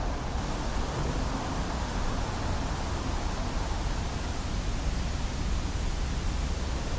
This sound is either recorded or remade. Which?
recorded